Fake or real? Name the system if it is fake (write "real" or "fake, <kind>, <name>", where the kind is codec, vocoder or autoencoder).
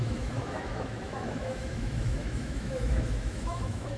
fake, autoencoder, DAC-VAE